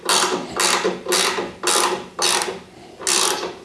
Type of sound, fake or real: real